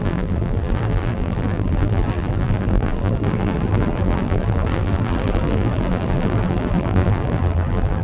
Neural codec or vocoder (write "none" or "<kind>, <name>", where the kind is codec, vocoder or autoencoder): vocoder, BigVGAN v2